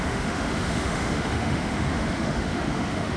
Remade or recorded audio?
remade